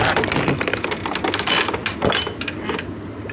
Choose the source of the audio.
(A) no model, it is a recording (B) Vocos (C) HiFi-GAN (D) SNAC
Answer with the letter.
A